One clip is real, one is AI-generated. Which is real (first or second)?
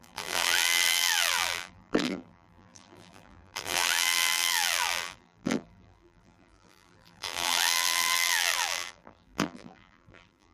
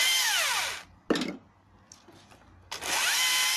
second